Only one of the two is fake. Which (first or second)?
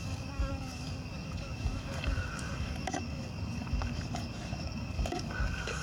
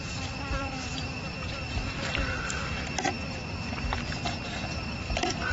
first